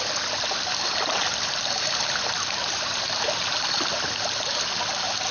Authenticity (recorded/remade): recorded